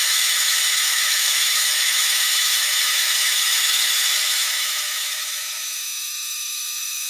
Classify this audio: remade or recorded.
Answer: remade